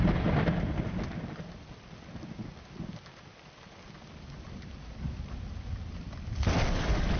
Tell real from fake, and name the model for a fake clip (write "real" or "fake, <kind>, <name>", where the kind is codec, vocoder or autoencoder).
real